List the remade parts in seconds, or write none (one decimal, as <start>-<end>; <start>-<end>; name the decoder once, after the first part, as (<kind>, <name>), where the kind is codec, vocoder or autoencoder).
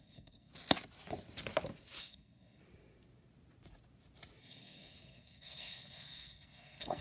0.0-0.5 (codec, SNAC); 2.0-2.6; 4.4-7.0